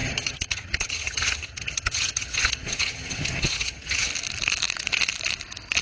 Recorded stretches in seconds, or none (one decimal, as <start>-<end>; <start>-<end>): 4.1-5.8